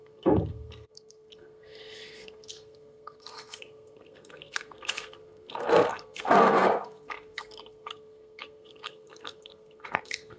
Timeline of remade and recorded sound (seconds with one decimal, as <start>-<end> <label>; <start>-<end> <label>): 0.0-10.4 remade